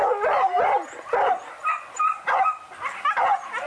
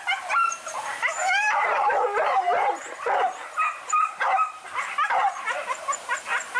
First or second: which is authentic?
first